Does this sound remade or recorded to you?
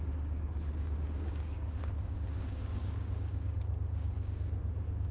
remade